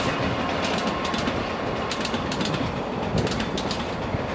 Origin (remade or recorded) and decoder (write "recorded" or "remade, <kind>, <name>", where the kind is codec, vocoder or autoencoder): recorded